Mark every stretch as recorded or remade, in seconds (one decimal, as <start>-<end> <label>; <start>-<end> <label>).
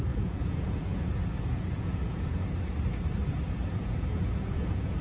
0.0-2.4 remade; 2.4-3.7 recorded; 3.7-5.0 remade